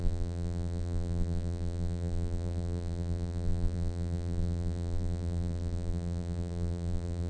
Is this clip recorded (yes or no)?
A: no